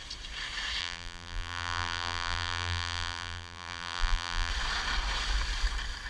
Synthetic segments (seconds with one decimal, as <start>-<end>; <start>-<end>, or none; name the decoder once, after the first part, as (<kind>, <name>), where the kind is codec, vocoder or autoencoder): 0.8-4.5 (vocoder, BigVGAN v2)